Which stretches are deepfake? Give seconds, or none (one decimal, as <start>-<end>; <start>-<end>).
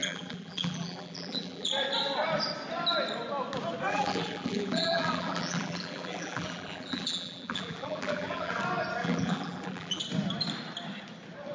0.0-1.7; 3.9-8.6; 9.0-10.0